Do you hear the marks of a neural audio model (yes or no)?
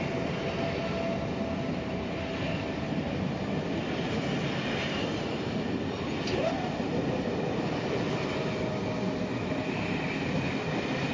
no